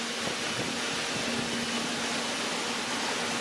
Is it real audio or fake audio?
real